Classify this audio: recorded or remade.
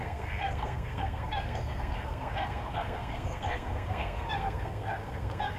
remade